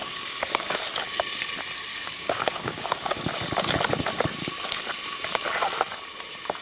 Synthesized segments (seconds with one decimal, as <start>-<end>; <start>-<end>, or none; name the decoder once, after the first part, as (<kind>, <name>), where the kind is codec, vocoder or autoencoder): 0.0-0.8 (codec, DAC); 1.9-3.1